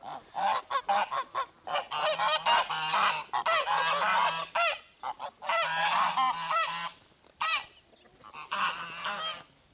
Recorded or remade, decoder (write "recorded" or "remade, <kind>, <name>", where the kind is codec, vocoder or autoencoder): recorded